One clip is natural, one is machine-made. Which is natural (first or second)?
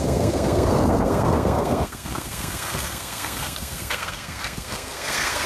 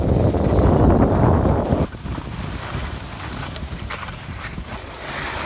second